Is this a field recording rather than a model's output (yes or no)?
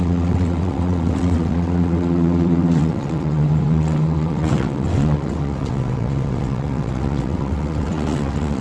no